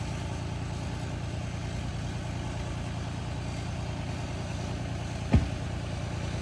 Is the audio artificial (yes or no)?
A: no